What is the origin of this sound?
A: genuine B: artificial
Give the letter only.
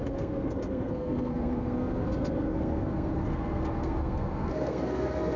B